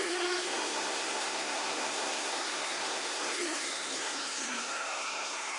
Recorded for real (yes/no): no